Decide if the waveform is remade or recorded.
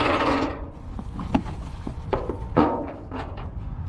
remade